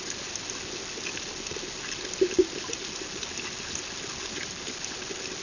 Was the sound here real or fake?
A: real